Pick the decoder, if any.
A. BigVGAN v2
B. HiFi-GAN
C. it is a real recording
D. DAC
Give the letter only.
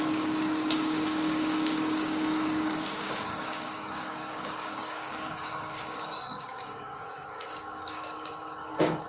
D